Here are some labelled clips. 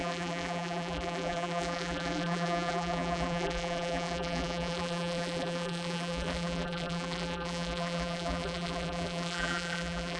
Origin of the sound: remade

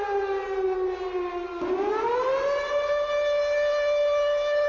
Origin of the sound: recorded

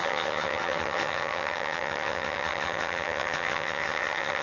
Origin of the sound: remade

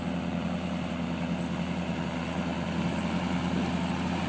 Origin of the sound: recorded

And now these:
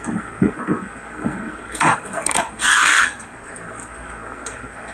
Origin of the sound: remade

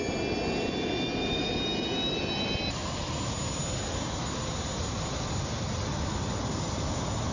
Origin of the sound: recorded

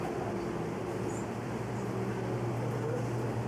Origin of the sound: recorded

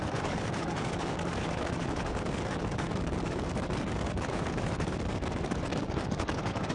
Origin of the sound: remade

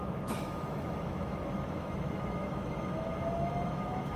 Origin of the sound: remade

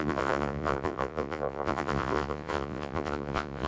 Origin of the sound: remade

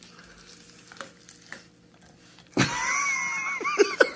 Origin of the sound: recorded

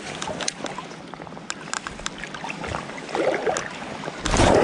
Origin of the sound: recorded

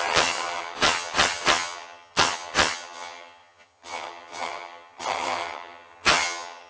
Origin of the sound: remade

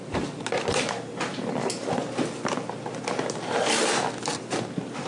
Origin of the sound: recorded